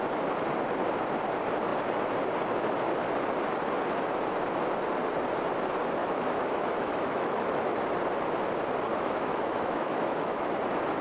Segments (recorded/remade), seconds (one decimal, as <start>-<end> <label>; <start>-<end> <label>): 0.0-6.0 recorded; 6.0-7.8 remade; 7.8-8.9 recorded; 8.9-10.5 remade; 10.5-11.0 recorded